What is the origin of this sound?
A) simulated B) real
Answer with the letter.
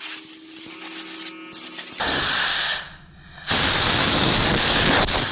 B